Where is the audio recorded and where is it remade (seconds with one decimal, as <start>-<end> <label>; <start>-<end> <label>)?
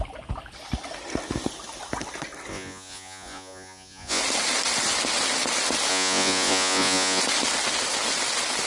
0.0-2.5 recorded; 2.5-4.2 remade; 4.2-5.9 recorded; 5.9-7.2 remade; 7.2-8.7 recorded